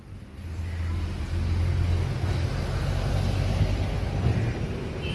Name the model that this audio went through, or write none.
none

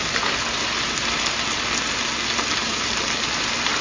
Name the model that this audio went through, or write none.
none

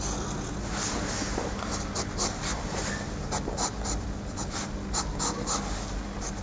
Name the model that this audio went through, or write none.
none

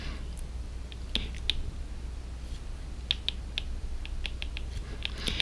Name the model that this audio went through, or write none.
none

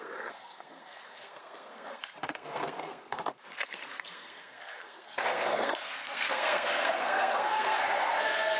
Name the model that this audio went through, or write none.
codec, SNAC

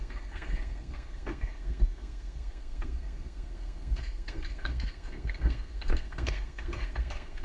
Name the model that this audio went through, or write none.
codec, SNAC